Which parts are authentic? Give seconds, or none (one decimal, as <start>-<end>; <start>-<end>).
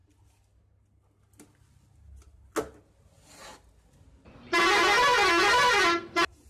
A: 0.0-6.5